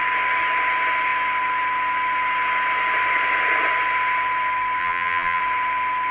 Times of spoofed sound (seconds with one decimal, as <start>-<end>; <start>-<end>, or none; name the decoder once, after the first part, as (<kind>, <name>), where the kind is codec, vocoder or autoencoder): 4.8-5.4 (vocoder, BigVGAN v2)